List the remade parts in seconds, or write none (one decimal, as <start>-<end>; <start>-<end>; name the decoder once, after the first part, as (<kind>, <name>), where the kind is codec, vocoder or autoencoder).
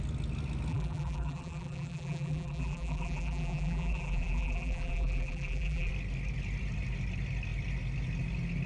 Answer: 0.7-5.9 (vocoder, BigVGAN v2)